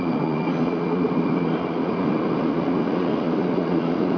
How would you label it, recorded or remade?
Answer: remade